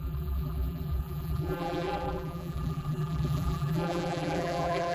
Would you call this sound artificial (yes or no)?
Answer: yes